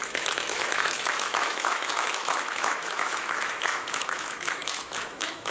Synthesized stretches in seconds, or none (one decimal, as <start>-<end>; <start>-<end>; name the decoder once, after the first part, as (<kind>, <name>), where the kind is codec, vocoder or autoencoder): 0.0-5.5 (autoencoder, DAC-VAE)